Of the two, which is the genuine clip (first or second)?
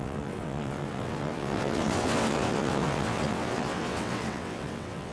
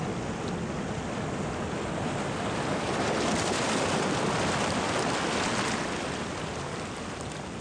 second